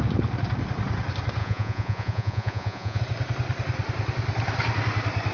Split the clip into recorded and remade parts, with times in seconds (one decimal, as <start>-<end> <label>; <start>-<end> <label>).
0.0-1.4 recorded; 1.4-3.0 remade; 3.0-5.3 recorded